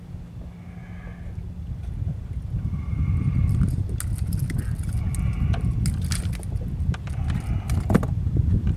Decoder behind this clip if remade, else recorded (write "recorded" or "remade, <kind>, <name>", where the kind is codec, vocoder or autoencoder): recorded